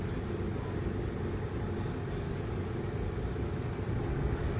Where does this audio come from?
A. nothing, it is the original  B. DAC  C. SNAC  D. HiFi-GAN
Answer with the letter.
A